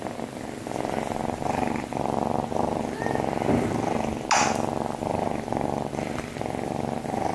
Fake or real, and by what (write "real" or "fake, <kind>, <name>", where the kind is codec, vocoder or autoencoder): real